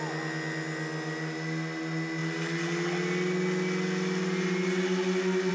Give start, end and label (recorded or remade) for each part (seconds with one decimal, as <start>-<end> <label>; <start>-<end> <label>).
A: 0.0-5.5 recorded